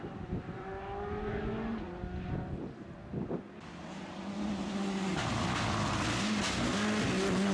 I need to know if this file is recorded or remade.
recorded